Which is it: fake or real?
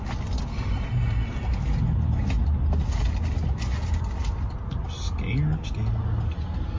real